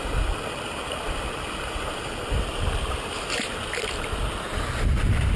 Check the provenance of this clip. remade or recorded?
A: recorded